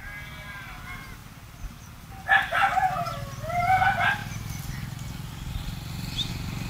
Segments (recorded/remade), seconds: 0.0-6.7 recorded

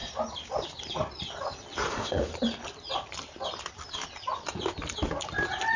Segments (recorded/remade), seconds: 0.0-1.9 recorded; 1.9-2.3 remade; 2.3-5.8 recorded

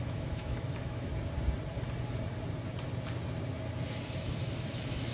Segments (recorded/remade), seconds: 0.0-1.1 remade; 1.1-4.2 recorded; 4.2-5.1 remade

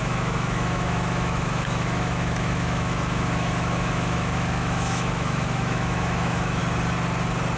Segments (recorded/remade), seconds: 0.0-6.6 remade; 6.6-7.6 recorded

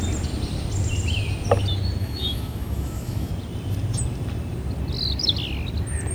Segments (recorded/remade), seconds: 0.0-2.0 recorded; 2.0-3.3 remade; 3.3-6.1 recorded